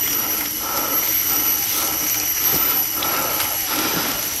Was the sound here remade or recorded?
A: recorded